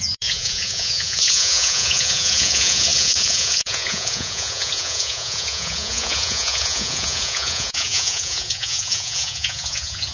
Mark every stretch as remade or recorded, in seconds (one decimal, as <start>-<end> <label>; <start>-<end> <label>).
0.0-10.1 remade